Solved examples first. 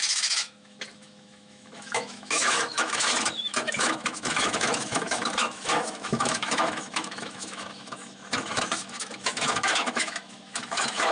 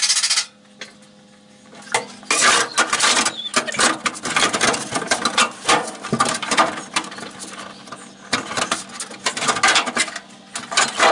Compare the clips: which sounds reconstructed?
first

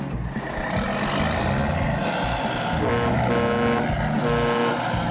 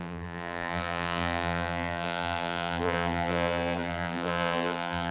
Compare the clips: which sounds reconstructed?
second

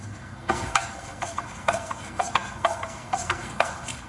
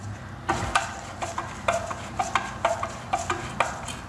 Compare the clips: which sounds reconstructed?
first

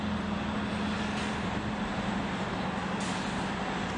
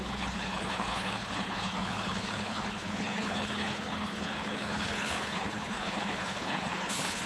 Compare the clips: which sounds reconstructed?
second